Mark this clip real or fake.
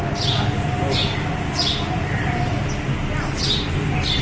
real